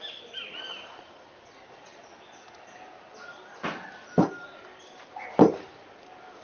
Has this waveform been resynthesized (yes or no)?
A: no